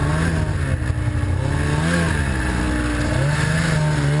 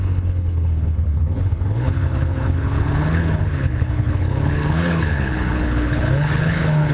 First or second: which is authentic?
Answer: first